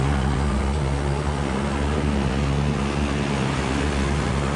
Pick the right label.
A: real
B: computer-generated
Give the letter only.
B